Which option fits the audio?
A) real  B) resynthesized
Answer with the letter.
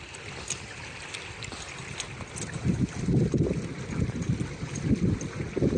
A